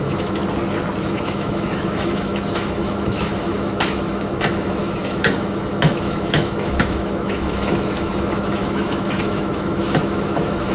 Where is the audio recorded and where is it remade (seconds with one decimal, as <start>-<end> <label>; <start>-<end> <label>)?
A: 0.0-0.4 remade; 0.4-1.0 recorded; 1.0-10.7 remade